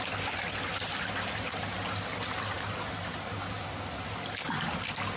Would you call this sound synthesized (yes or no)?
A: no